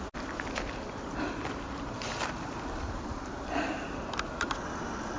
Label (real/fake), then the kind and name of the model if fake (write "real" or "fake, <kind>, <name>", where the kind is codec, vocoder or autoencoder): real